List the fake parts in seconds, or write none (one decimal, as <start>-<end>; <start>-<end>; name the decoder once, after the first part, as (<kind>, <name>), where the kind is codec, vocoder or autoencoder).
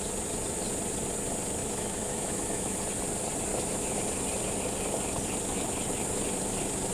1.6-2.8 (autoencoder, DAC-VAE); 3.5-4.0